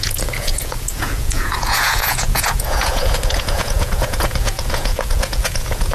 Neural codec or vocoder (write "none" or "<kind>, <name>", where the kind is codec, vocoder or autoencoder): vocoder, Vocos